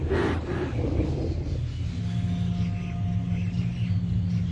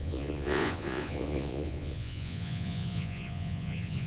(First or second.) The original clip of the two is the first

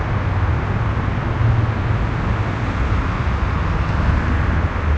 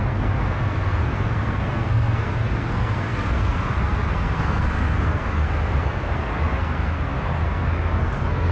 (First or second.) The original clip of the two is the first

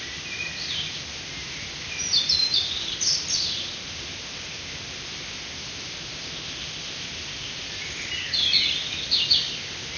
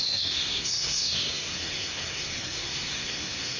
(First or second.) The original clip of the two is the first